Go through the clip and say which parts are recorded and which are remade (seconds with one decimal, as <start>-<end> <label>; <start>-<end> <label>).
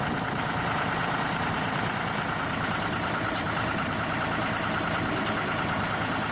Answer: 0.0-1.0 recorded; 1.0-4.8 remade; 4.8-6.3 recorded